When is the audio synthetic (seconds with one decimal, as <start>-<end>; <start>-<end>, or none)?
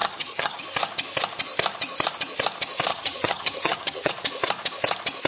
0.0-0.6; 2.9-4.1